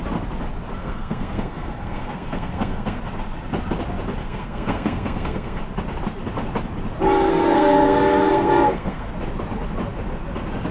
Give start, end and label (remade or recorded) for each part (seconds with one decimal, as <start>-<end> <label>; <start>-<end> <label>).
0.0-0.8 recorded; 0.8-3.0 remade; 3.0-4.2 recorded; 4.2-5.6 remade; 5.6-7.3 recorded; 7.3-9.1 remade; 9.1-10.7 recorded